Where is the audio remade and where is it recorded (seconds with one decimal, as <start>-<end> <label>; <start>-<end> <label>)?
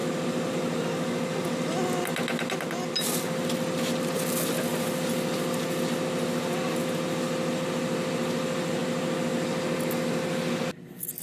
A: 0.0-11.2 recorded